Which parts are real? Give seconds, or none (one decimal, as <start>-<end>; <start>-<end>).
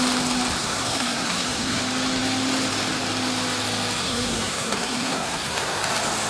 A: 0.0-0.6; 1.8-4.0; 5.8-6.3